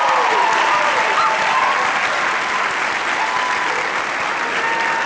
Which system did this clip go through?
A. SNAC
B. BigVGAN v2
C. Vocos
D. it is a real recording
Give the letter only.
D